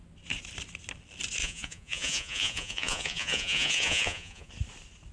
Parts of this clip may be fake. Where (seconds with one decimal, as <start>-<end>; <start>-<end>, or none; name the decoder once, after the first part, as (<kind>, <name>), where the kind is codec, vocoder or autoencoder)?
1.4-4.5 (vocoder, Vocos)